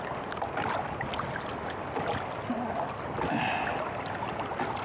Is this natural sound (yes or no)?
yes